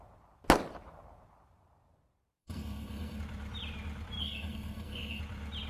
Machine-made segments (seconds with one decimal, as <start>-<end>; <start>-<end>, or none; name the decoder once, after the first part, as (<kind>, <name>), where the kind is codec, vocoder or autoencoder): 2.4-3.2 (codec, SNAC); 4.2-5.2